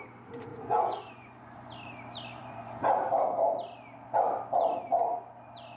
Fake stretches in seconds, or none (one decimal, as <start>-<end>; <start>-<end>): 0.5-1.7; 2.4-2.9